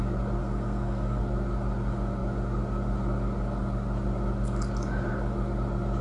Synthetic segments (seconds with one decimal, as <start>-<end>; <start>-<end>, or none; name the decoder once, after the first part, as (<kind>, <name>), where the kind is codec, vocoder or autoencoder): 0.4-1.2 (codec, SNAC)